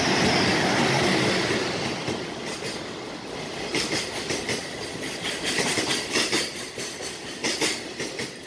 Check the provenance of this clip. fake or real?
real